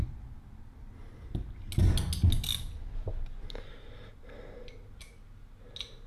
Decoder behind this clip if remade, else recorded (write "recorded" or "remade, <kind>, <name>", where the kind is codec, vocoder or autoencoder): recorded